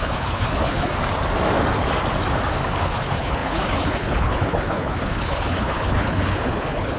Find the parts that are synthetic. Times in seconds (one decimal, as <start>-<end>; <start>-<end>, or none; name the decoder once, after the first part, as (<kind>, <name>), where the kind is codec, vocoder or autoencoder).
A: 0.0-0.9 (codec, HILCodec); 2.8-7.0